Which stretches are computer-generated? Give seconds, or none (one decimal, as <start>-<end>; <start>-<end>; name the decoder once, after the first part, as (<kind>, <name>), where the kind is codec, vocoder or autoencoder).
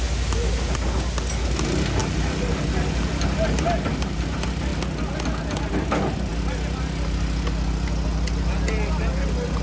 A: none